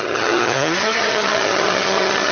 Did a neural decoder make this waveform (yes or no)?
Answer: yes